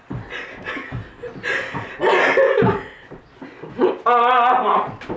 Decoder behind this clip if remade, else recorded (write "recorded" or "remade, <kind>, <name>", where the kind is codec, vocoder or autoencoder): recorded